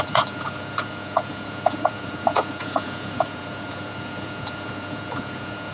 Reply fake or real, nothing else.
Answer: fake